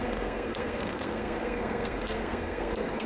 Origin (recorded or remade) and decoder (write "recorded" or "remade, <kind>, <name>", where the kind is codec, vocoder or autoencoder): remade, codec, SNAC